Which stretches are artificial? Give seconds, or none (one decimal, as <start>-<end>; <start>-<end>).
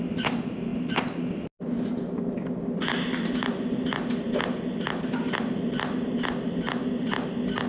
none